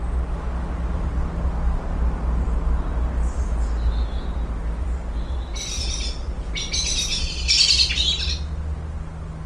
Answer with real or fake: real